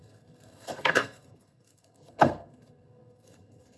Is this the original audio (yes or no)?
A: no